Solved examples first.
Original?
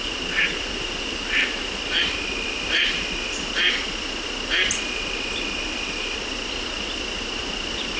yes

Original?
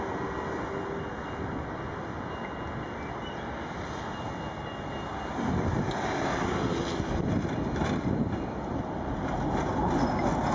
yes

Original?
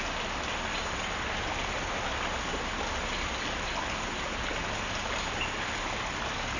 yes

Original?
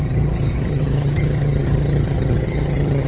no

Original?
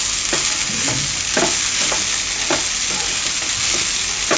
yes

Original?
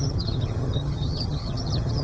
no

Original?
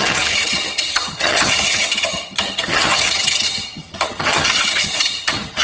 no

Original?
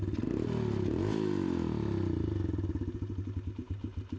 yes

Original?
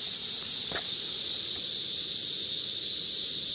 yes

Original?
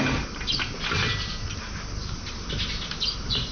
yes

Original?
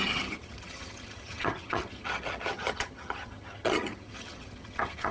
no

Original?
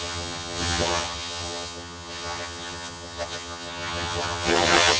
no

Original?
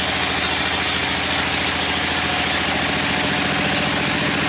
yes